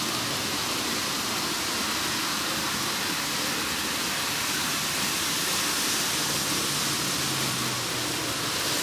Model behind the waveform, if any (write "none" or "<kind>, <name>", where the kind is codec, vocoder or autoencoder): none